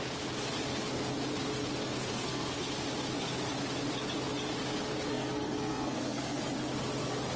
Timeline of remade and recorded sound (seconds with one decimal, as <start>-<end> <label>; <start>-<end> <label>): 0.0-2.0 recorded; 2.0-2.5 remade; 2.5-5.1 recorded; 5.1-6.4 remade; 6.4-7.4 recorded